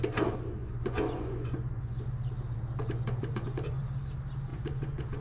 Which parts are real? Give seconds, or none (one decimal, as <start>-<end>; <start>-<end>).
0.0-0.6; 2.0-2.8; 3.8-4.5